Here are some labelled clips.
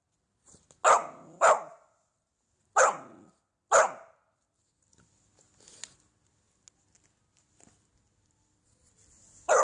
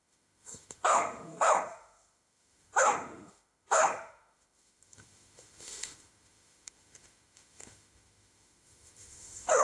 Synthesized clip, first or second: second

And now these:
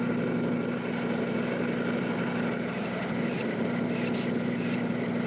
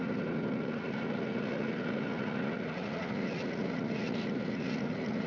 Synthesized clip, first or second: second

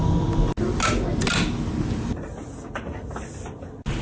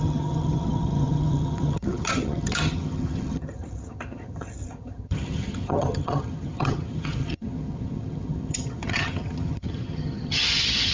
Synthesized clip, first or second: second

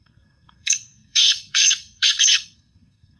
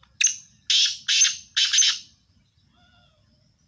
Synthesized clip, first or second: first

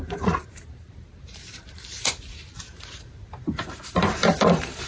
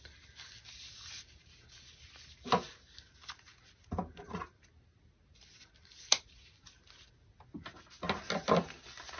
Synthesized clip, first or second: first